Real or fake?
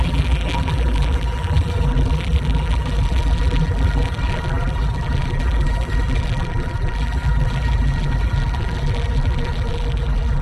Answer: fake